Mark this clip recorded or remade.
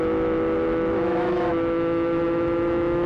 remade